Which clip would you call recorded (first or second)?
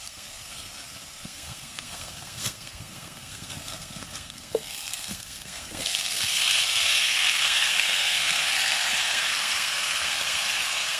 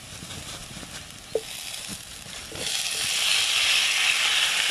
second